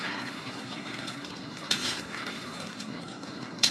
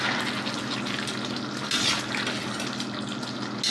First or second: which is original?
second